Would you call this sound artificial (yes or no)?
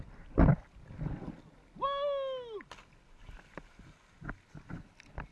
no